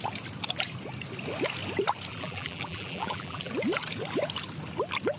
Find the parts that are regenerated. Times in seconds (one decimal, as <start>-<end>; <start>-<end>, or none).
2.1-3.5